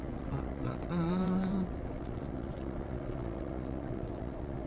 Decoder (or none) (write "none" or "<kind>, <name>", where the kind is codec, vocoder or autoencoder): vocoder, WaveNeXt